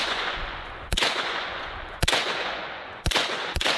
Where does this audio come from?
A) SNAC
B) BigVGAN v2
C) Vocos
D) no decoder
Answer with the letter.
C